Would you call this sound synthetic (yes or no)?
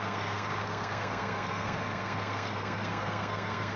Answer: yes